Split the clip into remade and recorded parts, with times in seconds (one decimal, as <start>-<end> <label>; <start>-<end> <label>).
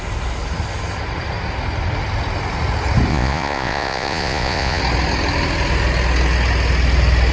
0.0-3.1 recorded; 3.1-4.8 remade; 4.8-7.3 recorded